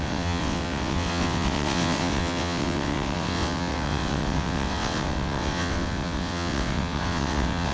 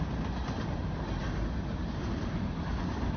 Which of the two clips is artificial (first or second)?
first